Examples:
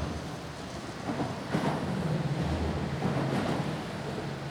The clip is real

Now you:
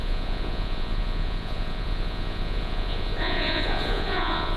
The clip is fake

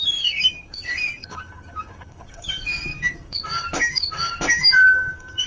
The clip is fake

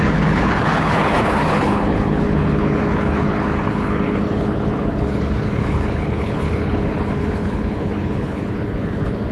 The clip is fake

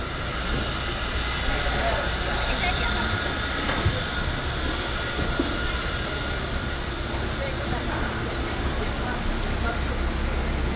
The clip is real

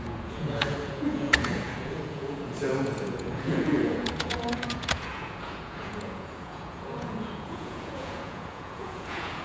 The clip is fake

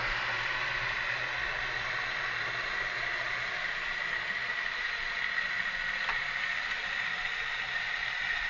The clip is real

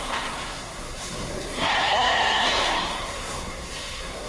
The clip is fake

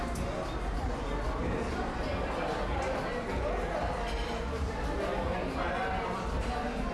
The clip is real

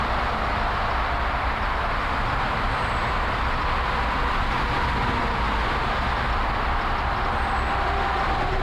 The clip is real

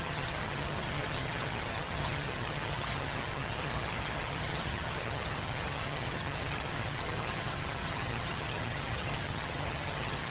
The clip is fake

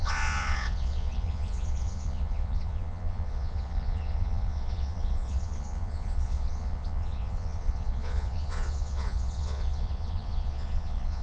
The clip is fake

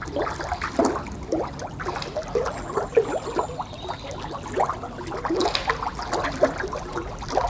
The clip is real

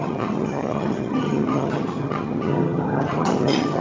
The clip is fake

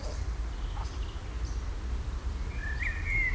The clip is real